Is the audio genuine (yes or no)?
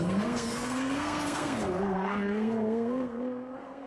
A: no